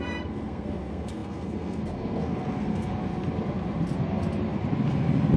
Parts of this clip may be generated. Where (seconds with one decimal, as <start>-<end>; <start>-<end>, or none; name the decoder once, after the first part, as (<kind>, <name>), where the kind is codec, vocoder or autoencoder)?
0.0-2.9 (codec, SNAC)